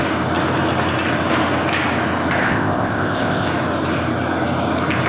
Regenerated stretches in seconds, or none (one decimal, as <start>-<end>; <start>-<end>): 2.4-3.5